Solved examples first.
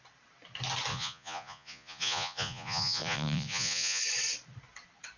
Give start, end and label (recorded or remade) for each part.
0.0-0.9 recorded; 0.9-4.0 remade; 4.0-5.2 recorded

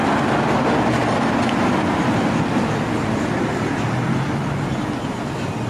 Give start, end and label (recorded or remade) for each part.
0.0-5.7 recorded

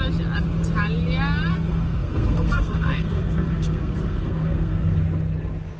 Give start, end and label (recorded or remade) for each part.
0.0-1.5 recorded; 1.5-5.0 remade; 5.0-5.8 recorded

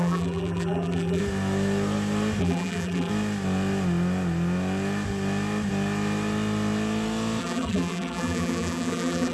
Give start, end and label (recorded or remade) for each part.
0.0-1.2 remade; 1.2-2.4 recorded; 2.4-3.1 remade; 3.1-7.4 recorded; 7.4-9.3 remade